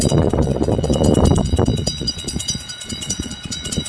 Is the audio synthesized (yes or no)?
yes